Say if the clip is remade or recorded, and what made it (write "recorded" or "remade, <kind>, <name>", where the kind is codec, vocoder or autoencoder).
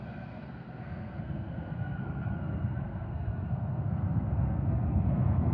remade, codec, SNAC